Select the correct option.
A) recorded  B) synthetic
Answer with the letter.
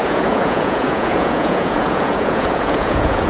B